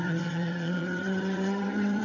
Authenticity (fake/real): fake